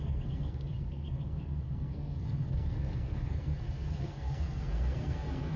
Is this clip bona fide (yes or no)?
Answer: no